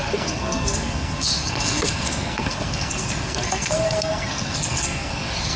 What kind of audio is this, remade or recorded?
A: remade